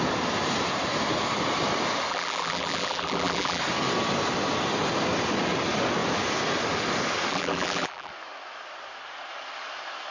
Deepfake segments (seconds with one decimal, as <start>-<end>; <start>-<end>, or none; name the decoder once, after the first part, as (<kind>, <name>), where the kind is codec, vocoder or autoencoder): 2.1-3.6 (vocoder, BigVGAN v2); 7.3-8.1